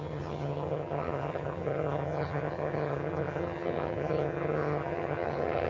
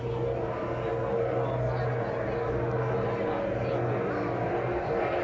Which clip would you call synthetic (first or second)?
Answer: first